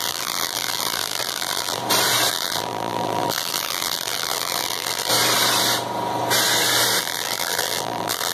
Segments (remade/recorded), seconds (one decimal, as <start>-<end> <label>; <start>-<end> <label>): 0.0-1.8 remade; 1.8-2.3 recorded; 2.3-5.1 remade; 5.1-7.0 recorded; 7.0-8.3 remade